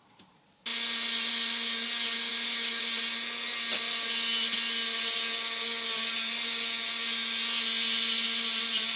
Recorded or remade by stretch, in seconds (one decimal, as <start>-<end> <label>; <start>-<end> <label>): 0.0-2.3 recorded; 2.3-2.8 remade; 2.8-9.0 recorded